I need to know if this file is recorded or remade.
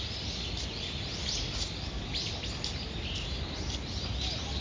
recorded